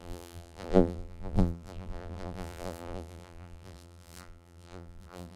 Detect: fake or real fake